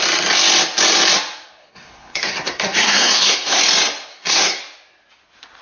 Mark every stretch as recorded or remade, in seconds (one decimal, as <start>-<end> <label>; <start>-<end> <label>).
0.0-1.6 recorded; 1.6-3.6 remade; 3.6-4.1 recorded; 4.1-4.6 remade; 4.6-5.6 recorded